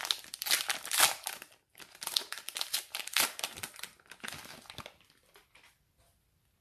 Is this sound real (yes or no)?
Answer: yes